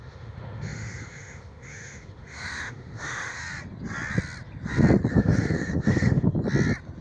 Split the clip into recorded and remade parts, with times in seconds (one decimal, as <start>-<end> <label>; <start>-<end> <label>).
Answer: 0.0-3.4 remade; 3.4-5.1 recorded; 5.1-6.3 remade; 6.3-7.0 recorded